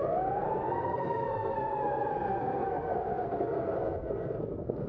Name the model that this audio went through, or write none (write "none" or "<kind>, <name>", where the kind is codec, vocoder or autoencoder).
codec, SNAC